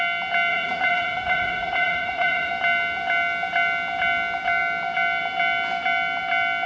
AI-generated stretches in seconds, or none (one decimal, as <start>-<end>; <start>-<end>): 0.5-2.5